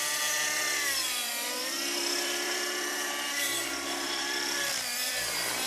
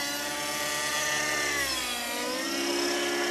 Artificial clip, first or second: first